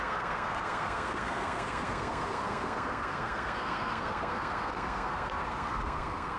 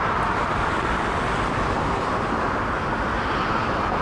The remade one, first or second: first